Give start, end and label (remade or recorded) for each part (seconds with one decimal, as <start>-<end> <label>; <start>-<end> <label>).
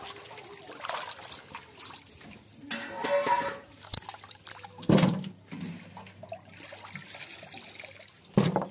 0.0-8.7 recorded